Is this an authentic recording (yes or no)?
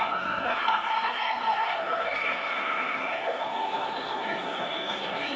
no